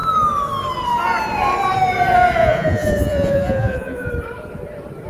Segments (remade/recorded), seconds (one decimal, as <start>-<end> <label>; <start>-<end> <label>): 0.0-2.4 recorded; 2.4-4.1 remade; 4.1-5.1 recorded